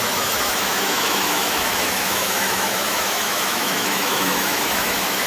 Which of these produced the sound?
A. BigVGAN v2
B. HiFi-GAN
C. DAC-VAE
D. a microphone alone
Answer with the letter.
C